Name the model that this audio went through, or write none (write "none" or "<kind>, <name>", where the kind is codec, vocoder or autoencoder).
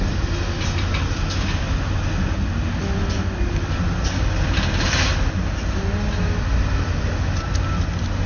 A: none